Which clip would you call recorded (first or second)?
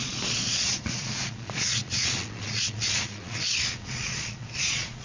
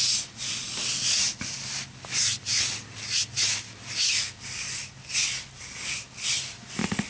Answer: second